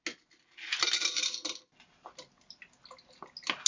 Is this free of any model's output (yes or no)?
yes